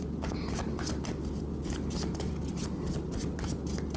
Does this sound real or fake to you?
real